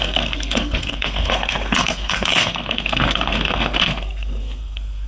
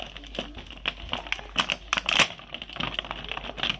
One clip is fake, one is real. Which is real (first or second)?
second